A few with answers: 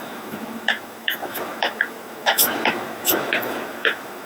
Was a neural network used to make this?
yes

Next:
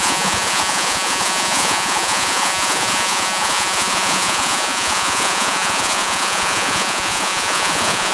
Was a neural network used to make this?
yes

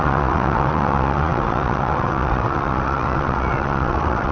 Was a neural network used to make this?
yes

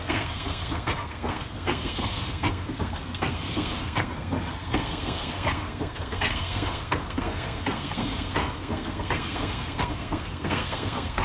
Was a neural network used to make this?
yes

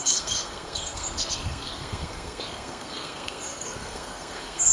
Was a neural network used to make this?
yes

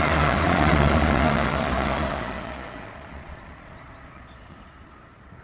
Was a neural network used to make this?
yes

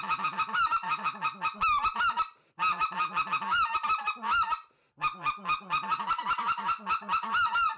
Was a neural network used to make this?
no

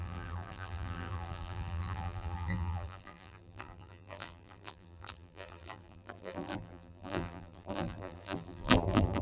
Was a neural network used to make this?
yes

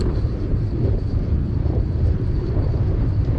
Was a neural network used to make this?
yes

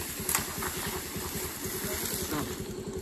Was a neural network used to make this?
no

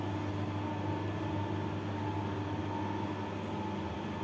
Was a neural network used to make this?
no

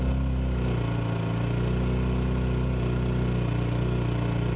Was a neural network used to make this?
no